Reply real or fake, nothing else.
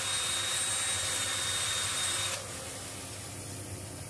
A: real